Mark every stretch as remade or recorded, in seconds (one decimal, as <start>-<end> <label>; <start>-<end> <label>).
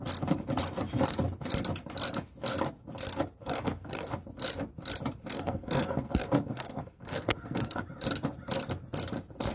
0.0-3.4 recorded; 3.4-4.1 remade; 4.1-5.3 recorded; 5.3-7.8 remade; 7.8-9.5 recorded